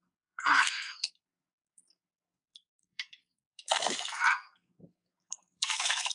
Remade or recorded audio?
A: remade